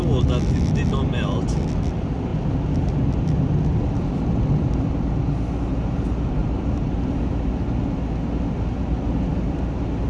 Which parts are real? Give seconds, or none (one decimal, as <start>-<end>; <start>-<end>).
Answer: 0.0-6.4; 7.2-10.1